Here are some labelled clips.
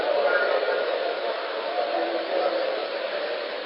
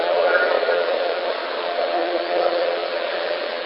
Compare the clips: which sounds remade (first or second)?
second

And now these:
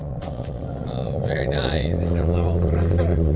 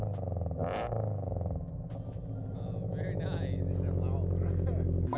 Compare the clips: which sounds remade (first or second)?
first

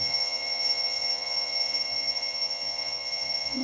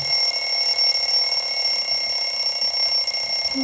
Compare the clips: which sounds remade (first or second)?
first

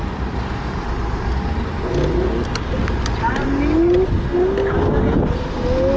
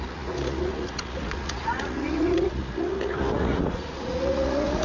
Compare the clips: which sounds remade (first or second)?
second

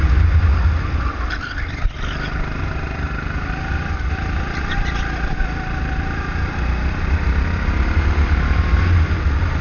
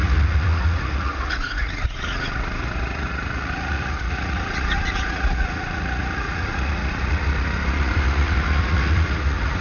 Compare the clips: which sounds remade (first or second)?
second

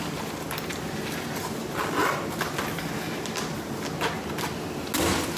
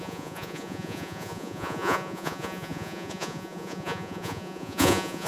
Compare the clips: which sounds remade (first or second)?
second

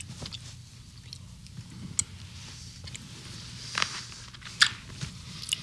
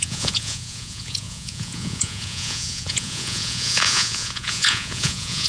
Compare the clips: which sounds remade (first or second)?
second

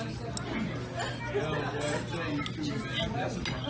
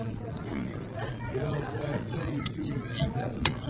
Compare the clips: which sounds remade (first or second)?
second